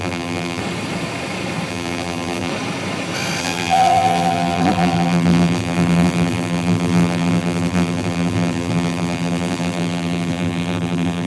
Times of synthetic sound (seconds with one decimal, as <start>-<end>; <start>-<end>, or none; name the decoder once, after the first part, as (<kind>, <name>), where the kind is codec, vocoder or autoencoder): 0.0-0.6 (vocoder, BigVGAN v2); 1.7-2.5; 3.4-11.3